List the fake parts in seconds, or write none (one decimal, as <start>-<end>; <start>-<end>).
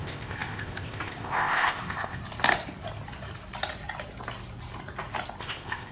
0.0-2.2; 5.4-5.9